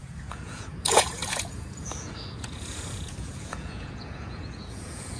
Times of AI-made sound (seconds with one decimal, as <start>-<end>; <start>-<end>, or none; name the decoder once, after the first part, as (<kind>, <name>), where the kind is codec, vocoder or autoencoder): 0.0-5.2 (vocoder, Vocos)